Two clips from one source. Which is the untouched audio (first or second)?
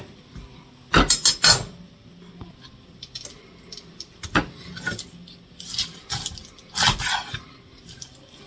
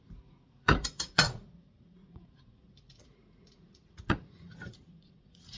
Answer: first